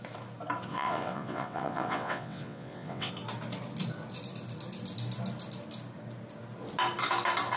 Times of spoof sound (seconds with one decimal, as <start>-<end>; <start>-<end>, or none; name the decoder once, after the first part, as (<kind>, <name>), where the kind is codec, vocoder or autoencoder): 0.7-3.1 (vocoder, WaveNeXt)